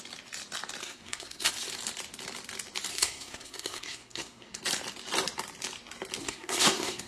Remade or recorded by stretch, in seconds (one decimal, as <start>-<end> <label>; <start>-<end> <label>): 0.0-0.8 recorded; 0.8-1.5 remade; 1.5-2.9 recorded; 2.9-4.6 remade; 4.6-6.2 recorded; 6.2-7.1 remade